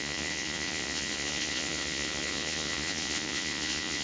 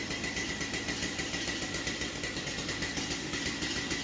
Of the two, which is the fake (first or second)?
first